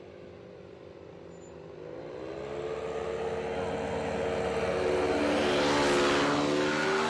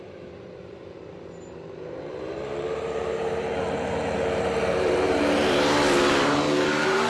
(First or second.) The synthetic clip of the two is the second